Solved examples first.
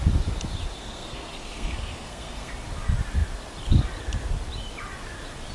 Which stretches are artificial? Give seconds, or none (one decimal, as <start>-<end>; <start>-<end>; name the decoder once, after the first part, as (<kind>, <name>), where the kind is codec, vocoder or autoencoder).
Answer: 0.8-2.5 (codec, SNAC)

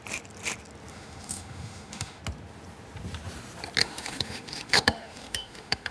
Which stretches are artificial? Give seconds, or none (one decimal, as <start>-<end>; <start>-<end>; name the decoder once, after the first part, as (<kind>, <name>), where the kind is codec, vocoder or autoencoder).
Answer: 0.9-2.2 (autoencoder, DAC-VAE); 3.8-5.9

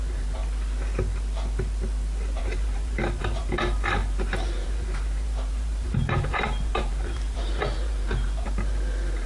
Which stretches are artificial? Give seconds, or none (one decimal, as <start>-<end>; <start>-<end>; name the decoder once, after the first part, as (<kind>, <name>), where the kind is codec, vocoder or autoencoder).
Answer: 0.0-0.4 (vocoder, BigVGAN v2); 2.4-9.3

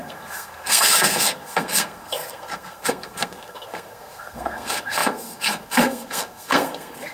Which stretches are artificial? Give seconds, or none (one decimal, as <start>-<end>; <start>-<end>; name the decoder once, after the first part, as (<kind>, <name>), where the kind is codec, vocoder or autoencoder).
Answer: 0.0-7.1 (codec, SNAC)